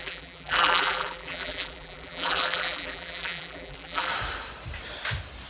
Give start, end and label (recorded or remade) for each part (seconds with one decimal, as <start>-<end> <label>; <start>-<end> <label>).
0.0-4.1 remade; 4.1-5.5 recorded